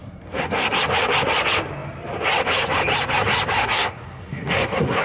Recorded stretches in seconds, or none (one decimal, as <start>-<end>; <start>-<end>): 0.8-3.6